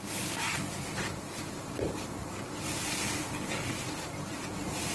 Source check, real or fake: fake